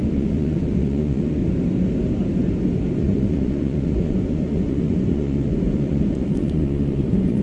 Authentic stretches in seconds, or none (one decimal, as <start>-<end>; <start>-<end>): 1.4-2.9